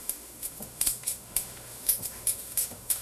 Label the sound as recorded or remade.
remade